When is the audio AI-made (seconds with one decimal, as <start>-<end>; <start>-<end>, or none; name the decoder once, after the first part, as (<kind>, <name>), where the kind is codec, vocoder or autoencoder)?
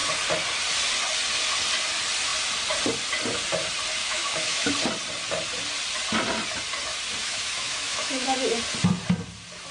4.0-4.7 (autoencoder, DAC-VAE); 7.2-8.6